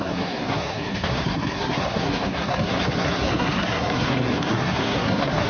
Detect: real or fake fake